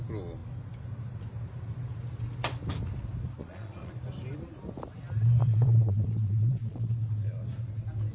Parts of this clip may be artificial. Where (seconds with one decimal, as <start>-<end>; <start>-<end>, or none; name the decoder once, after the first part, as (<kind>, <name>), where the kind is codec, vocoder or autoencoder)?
3.4-3.9 (vocoder, Vocos); 5.4-6.9